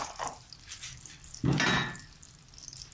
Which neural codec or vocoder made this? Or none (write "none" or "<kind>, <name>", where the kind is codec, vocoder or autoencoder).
none